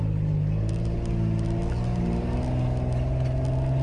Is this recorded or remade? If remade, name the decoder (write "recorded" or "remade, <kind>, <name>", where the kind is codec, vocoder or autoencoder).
recorded